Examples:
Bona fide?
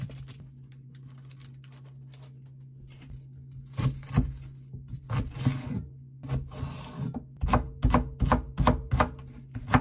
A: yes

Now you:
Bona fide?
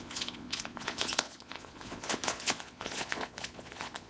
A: no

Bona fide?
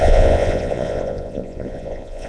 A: no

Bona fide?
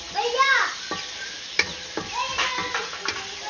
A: yes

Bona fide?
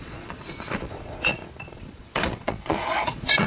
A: no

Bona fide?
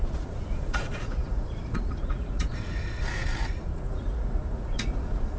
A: no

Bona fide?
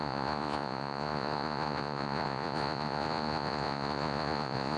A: no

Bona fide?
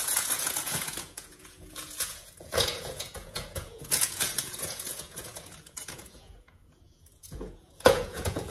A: no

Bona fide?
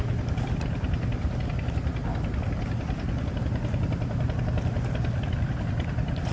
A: yes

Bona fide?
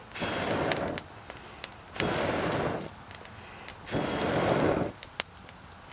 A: yes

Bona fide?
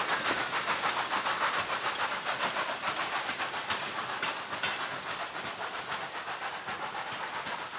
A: yes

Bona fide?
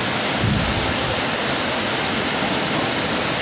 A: yes